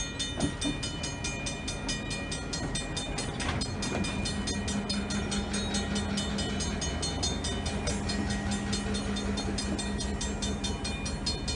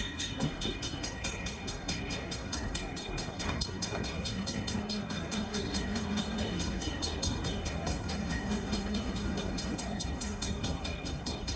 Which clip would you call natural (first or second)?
first